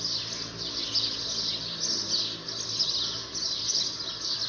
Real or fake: real